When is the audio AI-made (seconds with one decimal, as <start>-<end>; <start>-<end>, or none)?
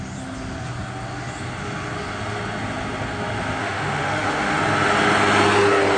3.6-4.6